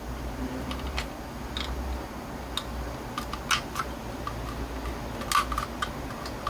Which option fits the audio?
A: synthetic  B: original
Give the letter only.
B